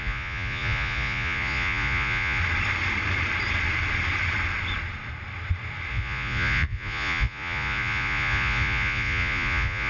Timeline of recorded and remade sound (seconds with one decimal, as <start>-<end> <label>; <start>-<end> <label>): 0.0-2.4 remade; 2.4-5.9 recorded; 5.9-9.9 remade

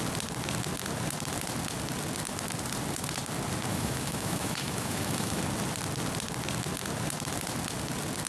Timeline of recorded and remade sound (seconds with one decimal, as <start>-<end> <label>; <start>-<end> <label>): 0.0-3.7 recorded; 3.7-5.4 remade; 5.4-8.3 recorded

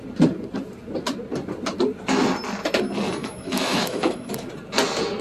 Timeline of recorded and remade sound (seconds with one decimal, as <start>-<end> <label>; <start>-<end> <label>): 0.0-3.2 recorded; 3.2-4.5 remade; 4.5-5.2 recorded

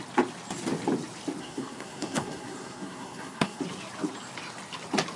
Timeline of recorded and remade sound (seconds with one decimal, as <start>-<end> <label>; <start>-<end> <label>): 0.0-1.4 recorded; 1.4-3.6 remade; 3.6-5.2 recorded

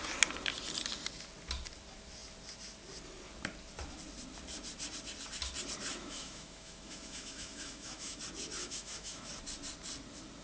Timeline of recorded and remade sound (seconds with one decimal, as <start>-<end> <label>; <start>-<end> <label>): 0.0-6.0 recorded; 6.0-8.2 remade; 8.2-8.6 recorded; 8.6-9.3 remade; 9.3-10.4 recorded